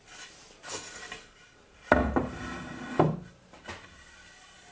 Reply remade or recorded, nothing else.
recorded